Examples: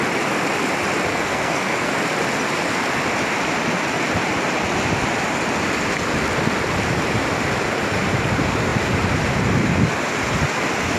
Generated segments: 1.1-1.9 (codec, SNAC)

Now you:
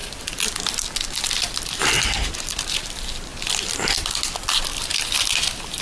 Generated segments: none

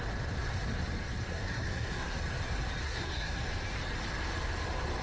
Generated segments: 1.3-2.2 (codec, SNAC); 2.8-3.4

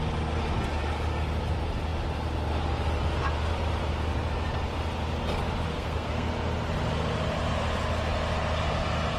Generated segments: 5.7-6.3 (codec, SNAC)

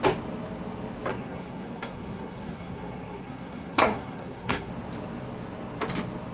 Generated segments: 1.1-4.7 (codec, SNAC)

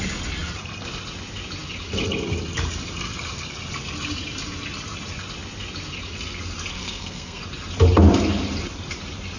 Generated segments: 6.7-7.4 (codec, SNAC)

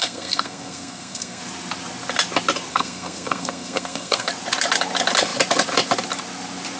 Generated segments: 0.0-1.4 (codec, SNAC); 2.7-4.3

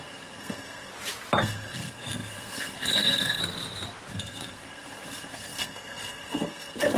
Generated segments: 0.0-0.9 (codec, SNAC); 1.4-3.4; 4.1-7.0